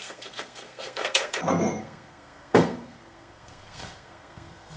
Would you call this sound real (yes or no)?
no